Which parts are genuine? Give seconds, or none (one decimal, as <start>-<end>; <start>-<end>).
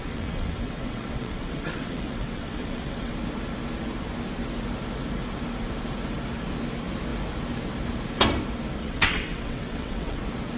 3.1-8.8; 10.2-10.6